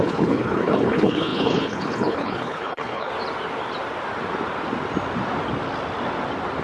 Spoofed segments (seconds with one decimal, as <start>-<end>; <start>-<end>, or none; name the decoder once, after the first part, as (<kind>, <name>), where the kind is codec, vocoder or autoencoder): 0.0-3.1 (codec, HILCodec)